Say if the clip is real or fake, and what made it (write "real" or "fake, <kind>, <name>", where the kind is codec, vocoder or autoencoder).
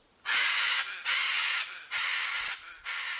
real